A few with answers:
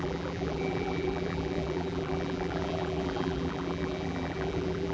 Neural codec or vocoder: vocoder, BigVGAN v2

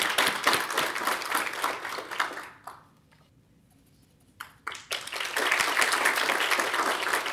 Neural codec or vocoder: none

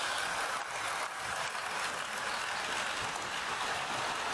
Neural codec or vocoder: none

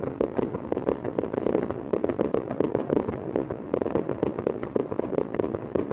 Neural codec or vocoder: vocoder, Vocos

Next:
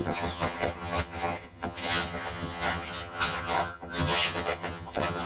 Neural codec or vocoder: vocoder, HiFi-GAN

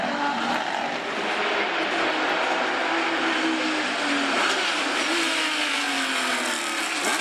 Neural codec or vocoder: none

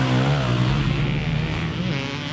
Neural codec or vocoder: none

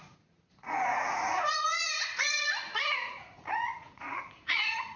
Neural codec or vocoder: vocoder, Vocos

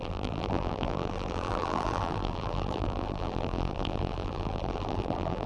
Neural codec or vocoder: vocoder, BigVGAN v2